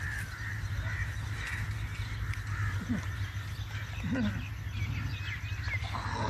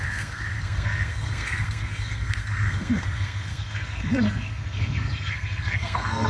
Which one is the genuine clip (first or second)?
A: first